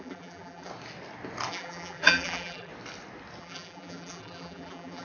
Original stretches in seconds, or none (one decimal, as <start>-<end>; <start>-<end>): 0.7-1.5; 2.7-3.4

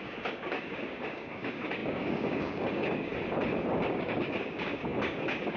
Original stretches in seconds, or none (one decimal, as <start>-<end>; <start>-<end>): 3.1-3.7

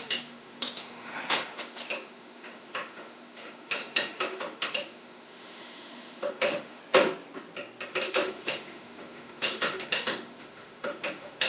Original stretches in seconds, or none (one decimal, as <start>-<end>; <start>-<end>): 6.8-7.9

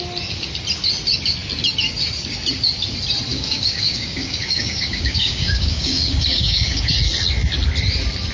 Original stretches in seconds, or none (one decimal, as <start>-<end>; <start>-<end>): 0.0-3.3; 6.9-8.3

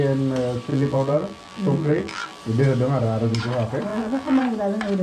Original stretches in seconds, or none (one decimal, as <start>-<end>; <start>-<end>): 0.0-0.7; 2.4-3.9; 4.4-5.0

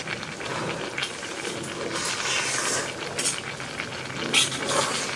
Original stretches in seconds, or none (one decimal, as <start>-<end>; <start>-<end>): 0.0-5.2

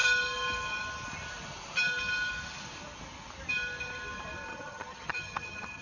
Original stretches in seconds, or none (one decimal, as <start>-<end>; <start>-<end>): 0.0-4.5